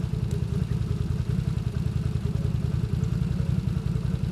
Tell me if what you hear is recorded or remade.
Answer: recorded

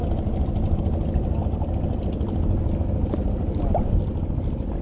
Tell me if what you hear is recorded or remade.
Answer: recorded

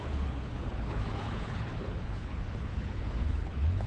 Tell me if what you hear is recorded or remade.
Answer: remade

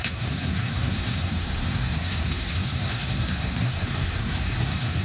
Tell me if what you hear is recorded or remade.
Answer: remade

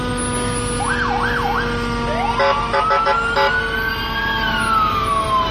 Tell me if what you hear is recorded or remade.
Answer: recorded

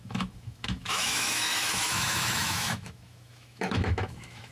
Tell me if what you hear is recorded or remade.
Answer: remade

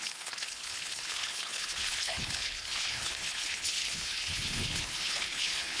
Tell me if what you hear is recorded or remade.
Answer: remade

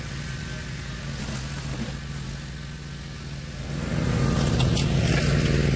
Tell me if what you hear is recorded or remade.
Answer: recorded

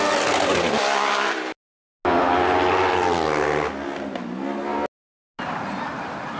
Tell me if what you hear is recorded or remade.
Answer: recorded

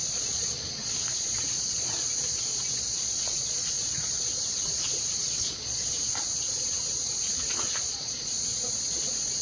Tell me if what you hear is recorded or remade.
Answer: remade